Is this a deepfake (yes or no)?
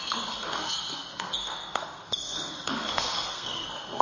yes